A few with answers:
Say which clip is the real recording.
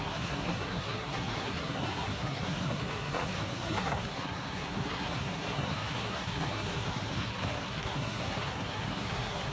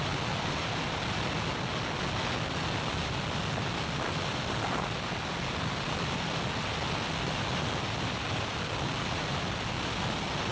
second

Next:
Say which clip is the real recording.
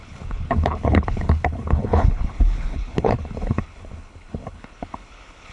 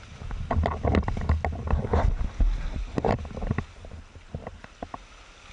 second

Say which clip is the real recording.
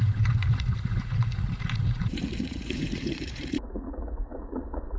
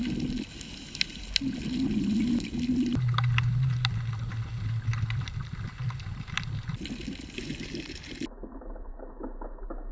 second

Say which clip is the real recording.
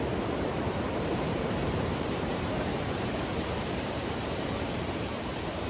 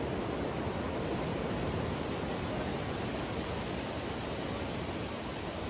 second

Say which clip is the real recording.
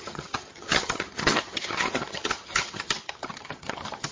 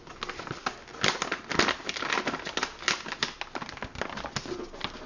second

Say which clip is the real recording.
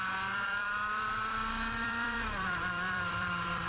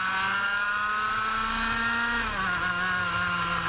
second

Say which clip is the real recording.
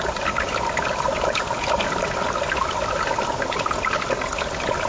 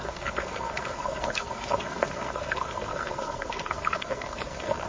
first